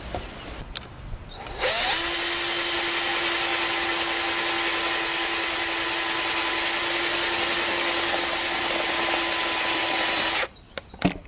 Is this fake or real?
real